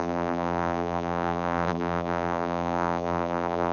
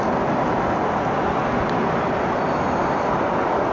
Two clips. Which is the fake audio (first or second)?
first